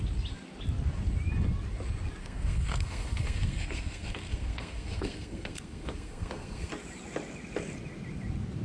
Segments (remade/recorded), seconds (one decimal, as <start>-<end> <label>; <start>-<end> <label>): 0.0-2.2 recorded; 2.2-6.7 remade; 6.7-8.6 recorded